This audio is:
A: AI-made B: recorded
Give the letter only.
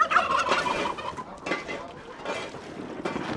B